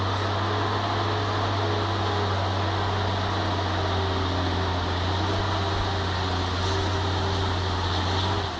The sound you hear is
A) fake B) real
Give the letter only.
B